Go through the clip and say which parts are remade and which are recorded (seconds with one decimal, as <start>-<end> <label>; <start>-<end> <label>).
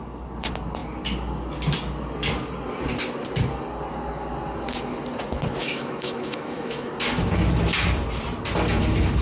0.0-5.6 recorded; 5.6-6.9 remade; 6.9-9.2 recorded